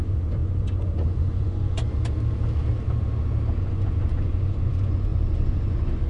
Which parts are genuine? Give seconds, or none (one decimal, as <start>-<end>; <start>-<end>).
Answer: 1.8-3.6